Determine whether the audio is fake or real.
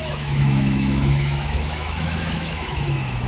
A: fake